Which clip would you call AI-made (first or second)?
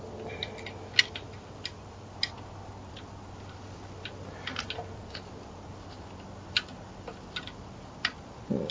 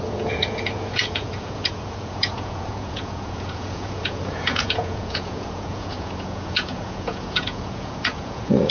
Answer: second